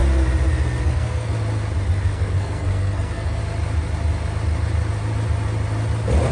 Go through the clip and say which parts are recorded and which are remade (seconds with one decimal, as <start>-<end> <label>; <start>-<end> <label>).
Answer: 0.0-0.8 recorded; 0.8-1.3 remade; 1.3-2.0 recorded; 2.0-3.4 remade; 3.4-6.3 recorded